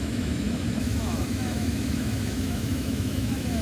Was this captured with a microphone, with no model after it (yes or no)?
no